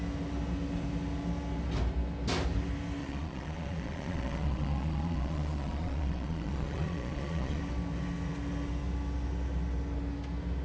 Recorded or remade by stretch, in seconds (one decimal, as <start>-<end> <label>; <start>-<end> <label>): 0.0-3.0 recorded; 3.0-7.6 remade; 7.6-10.6 recorded